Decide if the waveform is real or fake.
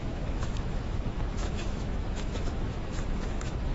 fake